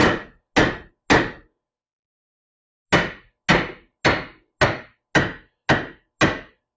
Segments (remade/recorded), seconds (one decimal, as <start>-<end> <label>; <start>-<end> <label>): 0.0-6.8 recorded